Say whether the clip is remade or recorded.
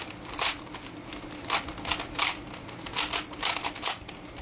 recorded